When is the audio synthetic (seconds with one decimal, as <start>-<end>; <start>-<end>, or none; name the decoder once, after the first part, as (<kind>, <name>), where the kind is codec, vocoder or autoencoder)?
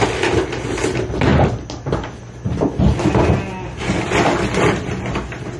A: none